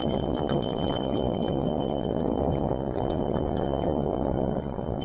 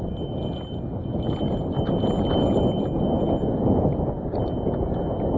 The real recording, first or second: second